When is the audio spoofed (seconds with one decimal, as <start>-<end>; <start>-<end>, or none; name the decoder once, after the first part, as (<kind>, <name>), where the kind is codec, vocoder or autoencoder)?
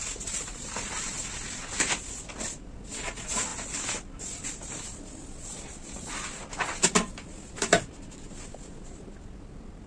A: 3.5-4.8 (vocoder, BigVGAN v2)